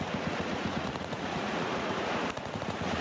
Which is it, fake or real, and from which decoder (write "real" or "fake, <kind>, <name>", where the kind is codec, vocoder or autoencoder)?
fake, vocoder, Vocos